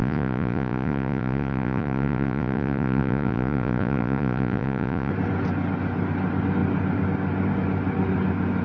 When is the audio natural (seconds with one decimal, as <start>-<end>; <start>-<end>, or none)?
5.1-8.6

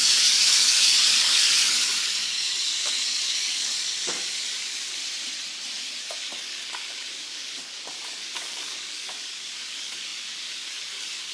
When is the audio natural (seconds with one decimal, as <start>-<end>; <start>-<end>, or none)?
5.0-6.0